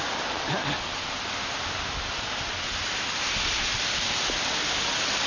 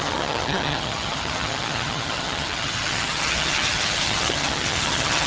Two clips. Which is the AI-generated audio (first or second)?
second